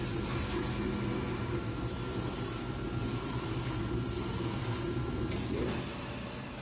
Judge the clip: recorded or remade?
recorded